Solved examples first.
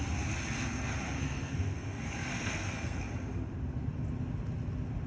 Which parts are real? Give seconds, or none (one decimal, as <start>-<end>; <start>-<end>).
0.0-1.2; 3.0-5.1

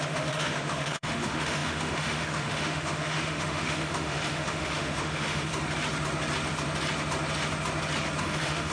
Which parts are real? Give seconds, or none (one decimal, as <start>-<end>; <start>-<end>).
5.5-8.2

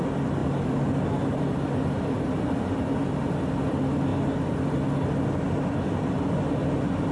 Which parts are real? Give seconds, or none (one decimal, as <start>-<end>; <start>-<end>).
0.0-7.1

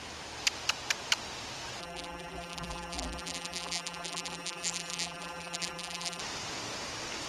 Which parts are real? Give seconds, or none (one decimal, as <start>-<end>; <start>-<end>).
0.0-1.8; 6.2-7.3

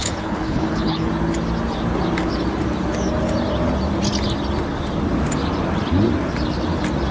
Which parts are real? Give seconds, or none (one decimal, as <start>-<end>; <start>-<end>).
1.1-7.1